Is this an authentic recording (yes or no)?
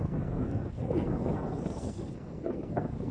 no